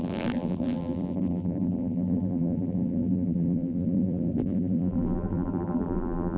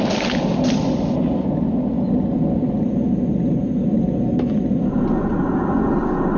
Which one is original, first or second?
second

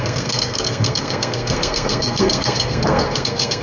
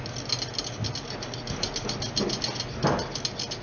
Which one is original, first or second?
second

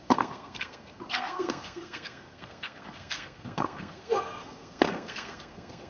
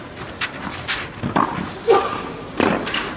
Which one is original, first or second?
second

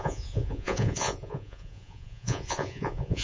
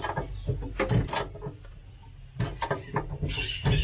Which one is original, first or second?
second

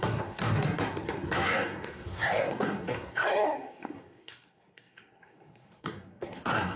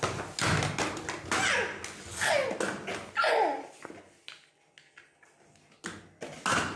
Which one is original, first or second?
second